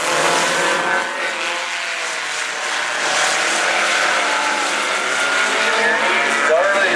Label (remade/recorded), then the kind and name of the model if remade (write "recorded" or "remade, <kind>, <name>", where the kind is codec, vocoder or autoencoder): recorded